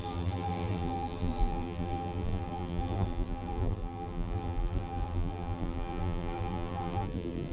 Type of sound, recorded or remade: remade